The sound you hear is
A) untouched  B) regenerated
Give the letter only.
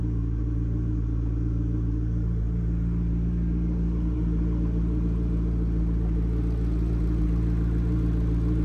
A